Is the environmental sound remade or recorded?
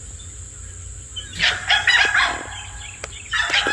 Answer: recorded